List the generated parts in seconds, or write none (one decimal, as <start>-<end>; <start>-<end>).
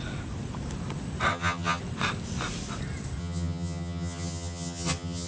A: 1.3-1.8; 3.2-5.3